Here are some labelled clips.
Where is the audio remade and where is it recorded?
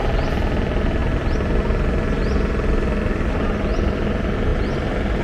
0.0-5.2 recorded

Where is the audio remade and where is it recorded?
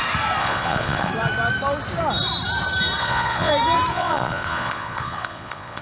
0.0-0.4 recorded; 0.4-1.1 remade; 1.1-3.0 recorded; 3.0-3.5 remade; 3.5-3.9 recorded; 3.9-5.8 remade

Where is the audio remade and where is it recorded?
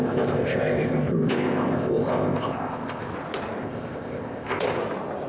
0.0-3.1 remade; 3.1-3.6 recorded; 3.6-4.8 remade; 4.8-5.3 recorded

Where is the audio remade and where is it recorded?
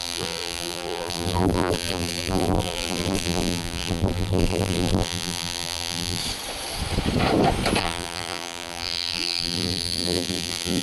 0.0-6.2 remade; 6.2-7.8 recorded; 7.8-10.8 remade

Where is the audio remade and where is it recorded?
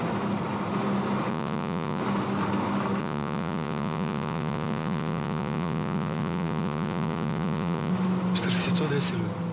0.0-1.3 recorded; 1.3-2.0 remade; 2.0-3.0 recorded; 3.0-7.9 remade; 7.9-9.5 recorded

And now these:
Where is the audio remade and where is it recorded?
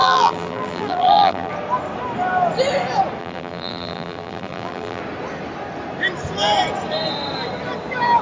0.0-1.5 remade; 1.5-3.2 recorded; 3.2-5.0 remade; 5.0-8.2 recorded